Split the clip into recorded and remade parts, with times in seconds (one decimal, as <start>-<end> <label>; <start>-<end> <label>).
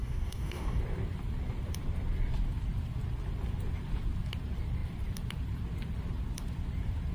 0.0-0.8 remade; 0.8-7.1 recorded